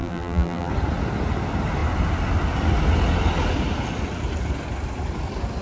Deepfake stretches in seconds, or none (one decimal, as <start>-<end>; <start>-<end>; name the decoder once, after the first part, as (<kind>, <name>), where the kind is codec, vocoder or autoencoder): 0.0-0.7 (vocoder, BigVGAN v2)